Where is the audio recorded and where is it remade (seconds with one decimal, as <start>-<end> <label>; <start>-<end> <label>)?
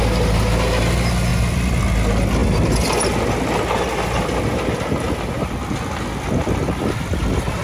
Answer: 0.0-1.3 recorded; 1.3-1.8 remade; 1.8-2.4 recorded; 2.4-2.9 remade; 2.9-6.4 recorded; 6.4-7.6 remade